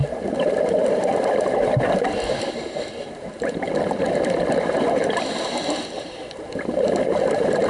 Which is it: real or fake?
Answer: fake